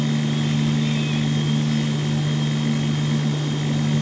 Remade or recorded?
recorded